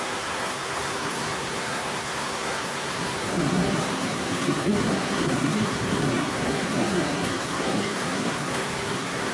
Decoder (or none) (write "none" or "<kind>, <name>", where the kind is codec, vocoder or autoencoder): codec, SNAC